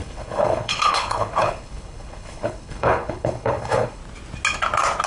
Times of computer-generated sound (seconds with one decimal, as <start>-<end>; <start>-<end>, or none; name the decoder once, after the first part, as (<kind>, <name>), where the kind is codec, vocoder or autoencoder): 0.0-4.0 (codec, HILCodec)